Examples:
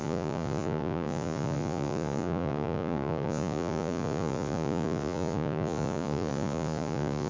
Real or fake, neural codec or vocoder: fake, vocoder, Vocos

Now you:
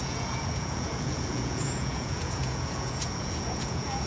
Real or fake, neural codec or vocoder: fake, vocoder, Vocos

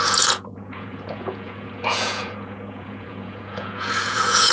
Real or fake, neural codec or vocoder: fake, vocoder, Vocos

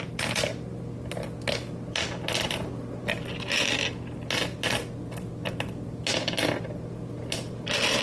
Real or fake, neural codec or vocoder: real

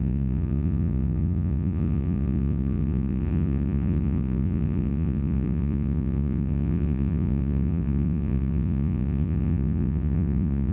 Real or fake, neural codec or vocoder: fake, vocoder, Vocos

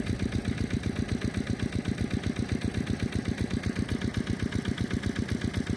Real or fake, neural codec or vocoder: real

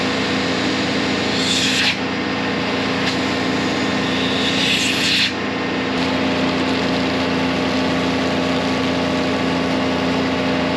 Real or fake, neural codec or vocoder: real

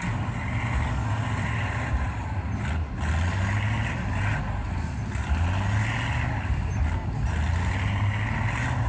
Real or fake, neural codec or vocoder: real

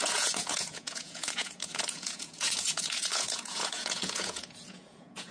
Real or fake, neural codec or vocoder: fake, vocoder, Vocos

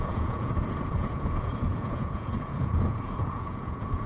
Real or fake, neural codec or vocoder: fake, vocoder, Vocos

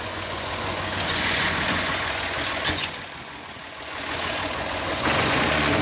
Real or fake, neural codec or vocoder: fake, vocoder, Vocos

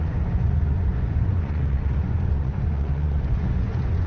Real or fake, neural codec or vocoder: fake, vocoder, Vocos